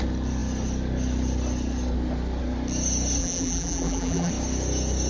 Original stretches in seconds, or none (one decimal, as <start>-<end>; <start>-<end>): 0.0-3.2; 4.3-5.1